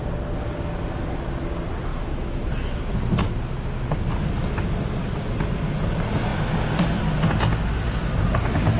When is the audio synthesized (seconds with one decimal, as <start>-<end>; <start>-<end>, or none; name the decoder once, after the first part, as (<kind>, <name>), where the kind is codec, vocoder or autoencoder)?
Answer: 1.9-2.4 (autoencoder, DAC-VAE)